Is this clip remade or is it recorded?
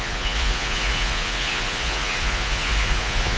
remade